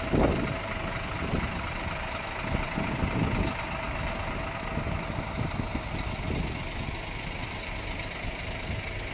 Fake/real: real